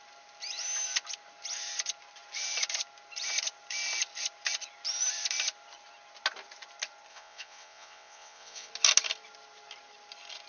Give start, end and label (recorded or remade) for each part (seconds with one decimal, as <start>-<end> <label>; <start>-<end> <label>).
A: 0.0-7.1 recorded; 7.1-8.7 remade; 8.7-10.5 recorded